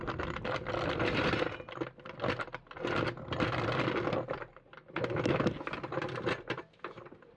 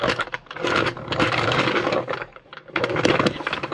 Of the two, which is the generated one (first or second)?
second